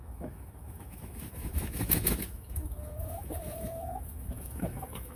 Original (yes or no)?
no